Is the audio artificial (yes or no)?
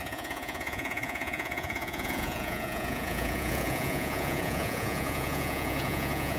yes